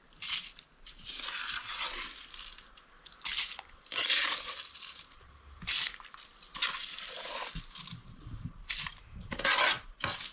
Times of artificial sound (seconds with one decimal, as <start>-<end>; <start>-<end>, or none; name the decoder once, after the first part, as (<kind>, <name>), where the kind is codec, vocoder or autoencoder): 3.3-5.1 (vocoder, BigVGAN v2)